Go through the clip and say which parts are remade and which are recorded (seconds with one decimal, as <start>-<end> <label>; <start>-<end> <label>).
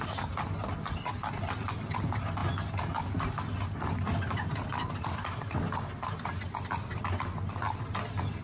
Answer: 0.0-8.4 recorded